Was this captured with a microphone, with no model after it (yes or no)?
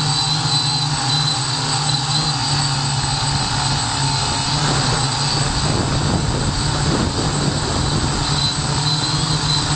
yes